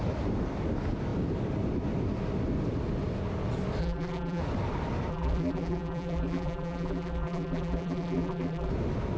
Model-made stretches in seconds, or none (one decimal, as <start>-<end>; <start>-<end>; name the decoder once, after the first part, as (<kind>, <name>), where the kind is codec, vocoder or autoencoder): 3.8-4.4 (vocoder, BigVGAN v2); 5.1-8.7

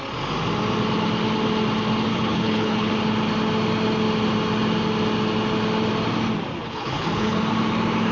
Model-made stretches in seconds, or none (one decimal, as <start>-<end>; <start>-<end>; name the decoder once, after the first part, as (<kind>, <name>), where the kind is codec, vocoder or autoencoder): 2.1-2.9 (codec, HILCodec); 6.6-7.4

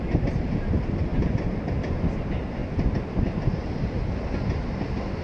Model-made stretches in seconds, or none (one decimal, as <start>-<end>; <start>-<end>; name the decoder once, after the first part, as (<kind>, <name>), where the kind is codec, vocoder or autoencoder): 1.1-1.6 (vocoder, BigVGAN v2); 2.6-4.1

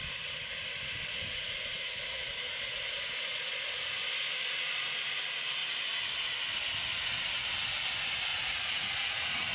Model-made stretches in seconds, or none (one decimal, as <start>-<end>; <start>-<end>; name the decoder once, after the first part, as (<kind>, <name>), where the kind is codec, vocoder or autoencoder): 5.6-6.1 (vocoder, Vocos); 8.3-9.5

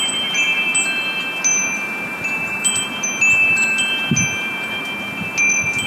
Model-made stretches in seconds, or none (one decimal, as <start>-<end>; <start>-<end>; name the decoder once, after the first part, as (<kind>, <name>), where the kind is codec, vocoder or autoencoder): 1.5-4.8 (vocoder, BigVGAN v2)

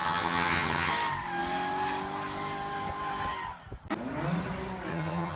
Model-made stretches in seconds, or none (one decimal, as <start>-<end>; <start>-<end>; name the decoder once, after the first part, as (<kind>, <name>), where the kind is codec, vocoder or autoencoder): 0.0-0.9 (vocoder, HiFi-GAN); 4.9-5.4